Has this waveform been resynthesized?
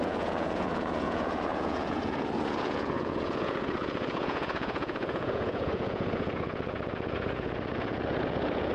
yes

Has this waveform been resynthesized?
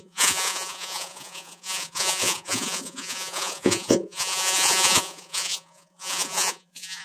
yes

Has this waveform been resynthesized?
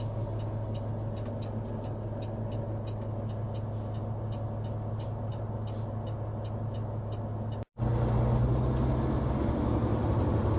no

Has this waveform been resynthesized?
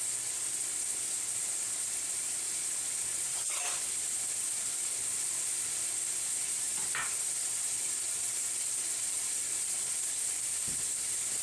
no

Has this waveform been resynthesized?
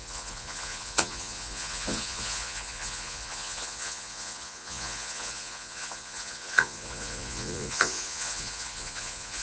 yes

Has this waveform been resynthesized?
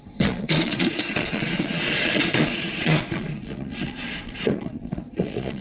yes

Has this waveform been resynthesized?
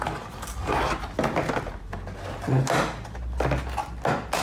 no